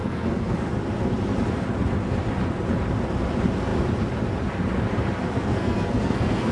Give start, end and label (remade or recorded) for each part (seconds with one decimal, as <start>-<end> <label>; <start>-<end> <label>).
0.0-0.7 remade; 0.7-5.3 recorded; 5.3-6.5 remade

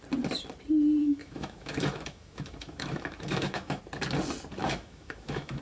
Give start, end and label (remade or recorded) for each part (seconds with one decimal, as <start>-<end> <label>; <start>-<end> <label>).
0.0-1.0 recorded; 1.0-3.8 remade; 3.8-4.6 recorded; 4.6-5.6 remade

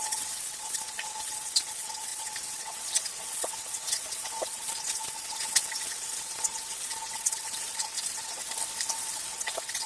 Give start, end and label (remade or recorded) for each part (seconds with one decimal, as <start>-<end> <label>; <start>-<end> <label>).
0.0-8.4 remade; 8.4-8.9 recorded; 8.9-9.9 remade

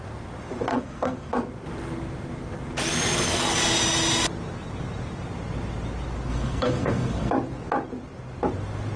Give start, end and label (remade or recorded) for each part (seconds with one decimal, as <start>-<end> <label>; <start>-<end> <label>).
0.0-0.7 recorded; 0.7-1.3 remade; 1.3-6.3 recorded; 6.3-7.3 remade; 7.3-9.0 recorded

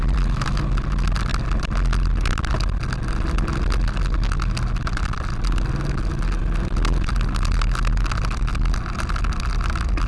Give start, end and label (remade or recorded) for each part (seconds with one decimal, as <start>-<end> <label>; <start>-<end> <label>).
0.0-10.1 recorded